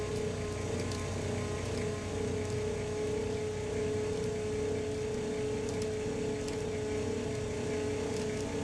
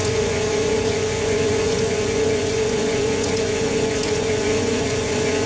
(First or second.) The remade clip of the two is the second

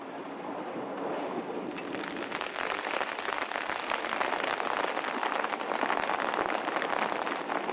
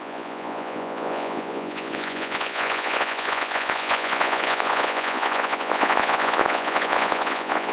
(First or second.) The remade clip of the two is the second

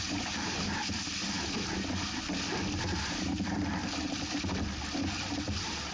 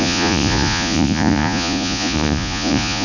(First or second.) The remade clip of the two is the second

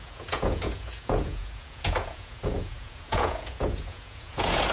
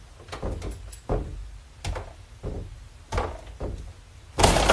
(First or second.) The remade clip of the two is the first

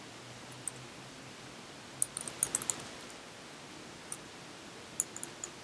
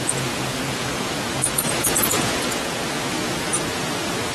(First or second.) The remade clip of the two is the second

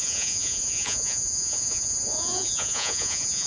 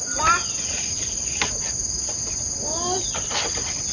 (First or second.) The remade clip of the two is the first